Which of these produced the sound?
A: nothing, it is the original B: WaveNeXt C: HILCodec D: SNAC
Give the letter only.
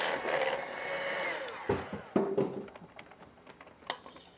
A